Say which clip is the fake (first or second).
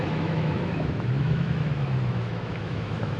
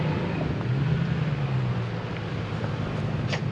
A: first